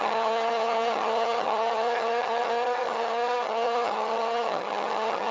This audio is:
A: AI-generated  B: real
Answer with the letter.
A